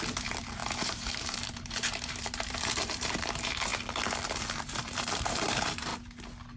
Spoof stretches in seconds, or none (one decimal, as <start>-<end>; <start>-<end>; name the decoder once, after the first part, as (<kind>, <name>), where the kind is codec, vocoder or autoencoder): 0.0-3.7 (vocoder, BigVGAN v2); 4.4-5.9

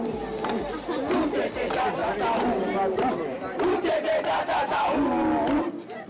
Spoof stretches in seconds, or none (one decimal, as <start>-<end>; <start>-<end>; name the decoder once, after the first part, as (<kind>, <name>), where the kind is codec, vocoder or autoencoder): none

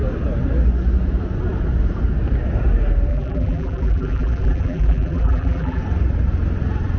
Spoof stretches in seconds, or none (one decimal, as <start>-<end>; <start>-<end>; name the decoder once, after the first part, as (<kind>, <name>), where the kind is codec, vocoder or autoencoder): 3.1-5.8 (vocoder, BigVGAN v2)

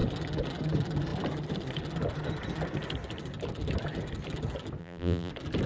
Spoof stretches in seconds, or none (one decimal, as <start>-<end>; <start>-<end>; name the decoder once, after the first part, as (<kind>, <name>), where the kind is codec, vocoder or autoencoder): 4.8-5.3 (vocoder, BigVGAN v2)